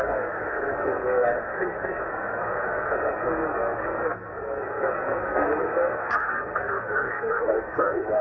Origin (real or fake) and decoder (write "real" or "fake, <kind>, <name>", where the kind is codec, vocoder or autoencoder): fake, codec, SNAC